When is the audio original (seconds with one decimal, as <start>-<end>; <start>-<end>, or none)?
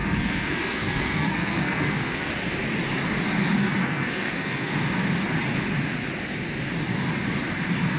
2.3-3.8; 4.7-8.0